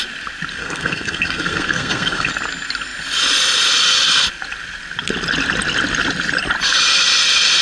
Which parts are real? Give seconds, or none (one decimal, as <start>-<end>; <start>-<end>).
0.0-0.5; 2.3-7.6